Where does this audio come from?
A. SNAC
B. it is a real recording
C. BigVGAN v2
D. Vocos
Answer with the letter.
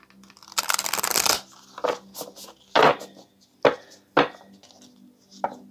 B